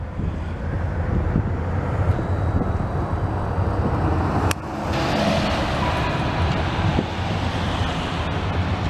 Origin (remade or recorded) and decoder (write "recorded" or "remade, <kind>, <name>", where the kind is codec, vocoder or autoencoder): recorded